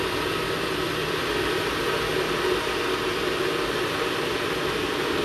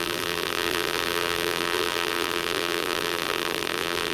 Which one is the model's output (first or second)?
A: second